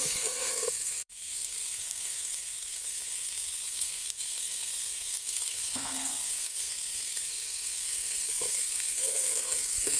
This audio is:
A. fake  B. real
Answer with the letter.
A